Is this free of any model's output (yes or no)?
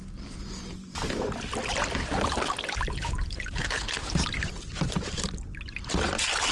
no